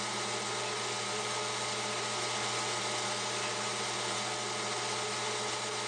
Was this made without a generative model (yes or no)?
yes